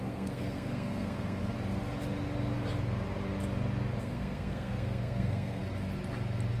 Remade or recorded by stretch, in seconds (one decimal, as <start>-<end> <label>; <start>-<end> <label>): 0.0-1.4 remade; 1.4-4.0 recorded; 4.0-5.6 remade; 5.6-6.6 recorded